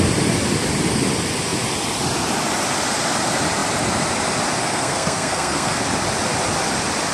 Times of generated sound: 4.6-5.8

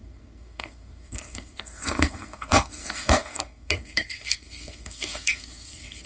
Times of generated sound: 0.0-6.1

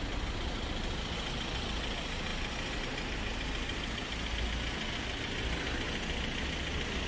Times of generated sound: none

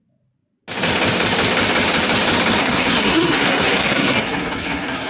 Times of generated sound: 2.6-5.1

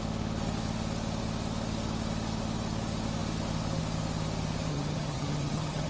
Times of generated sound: 4.7-5.9

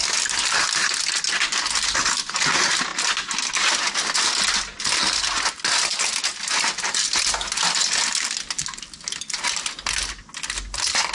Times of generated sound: 2.9-3.5

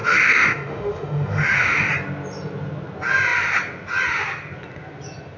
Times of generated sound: 0.0-1.9

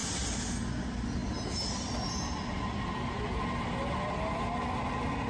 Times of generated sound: none